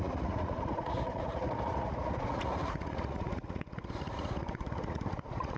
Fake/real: fake